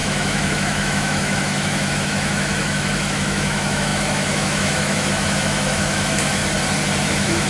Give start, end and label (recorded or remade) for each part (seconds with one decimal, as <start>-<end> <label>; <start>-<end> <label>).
0.0-6.4 remade; 6.4-7.0 recorded; 7.0-7.5 remade